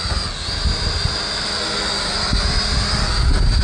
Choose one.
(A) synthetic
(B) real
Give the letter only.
B